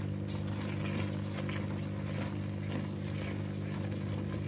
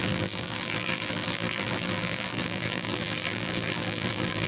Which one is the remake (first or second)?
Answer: second